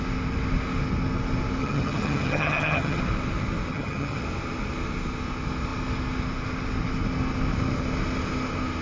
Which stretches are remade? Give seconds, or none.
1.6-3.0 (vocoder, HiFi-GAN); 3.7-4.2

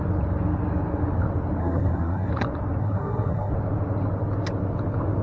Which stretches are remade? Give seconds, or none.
1.6-2.3 (codec, SNAC); 2.8-3.5

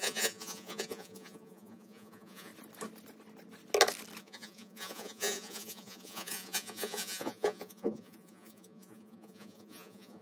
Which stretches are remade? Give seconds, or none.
0.0-2.5 (vocoder, Vocos); 4.2-10.2

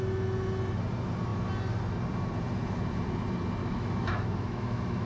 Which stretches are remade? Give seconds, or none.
3.6-5.1 (autoencoder, DAC-VAE)

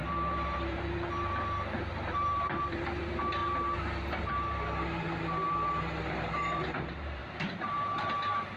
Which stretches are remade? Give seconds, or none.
0.0-8.6 (vocoder, BigVGAN v2)

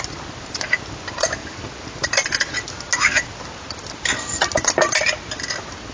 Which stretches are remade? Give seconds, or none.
none

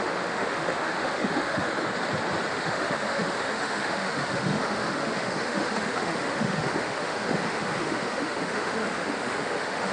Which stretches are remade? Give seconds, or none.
0.0-1.7 (autoencoder, DAC-VAE); 2.5-9.9